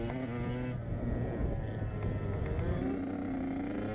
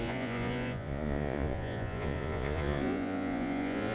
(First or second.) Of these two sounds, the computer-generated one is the second